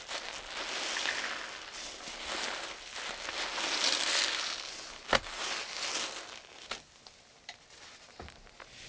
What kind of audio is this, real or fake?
real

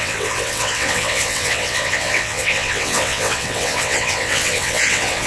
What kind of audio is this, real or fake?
fake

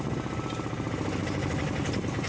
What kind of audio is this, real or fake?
real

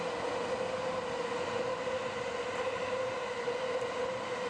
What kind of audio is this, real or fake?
real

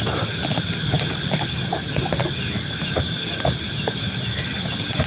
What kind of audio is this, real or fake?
real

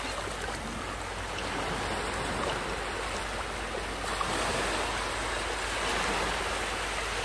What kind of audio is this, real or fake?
real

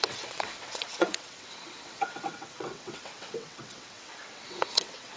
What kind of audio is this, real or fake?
fake